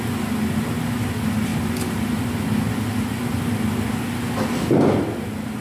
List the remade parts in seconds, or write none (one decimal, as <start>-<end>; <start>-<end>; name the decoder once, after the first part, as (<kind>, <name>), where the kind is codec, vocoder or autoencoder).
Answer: none